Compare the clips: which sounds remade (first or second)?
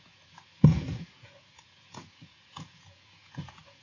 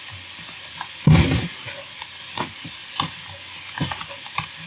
first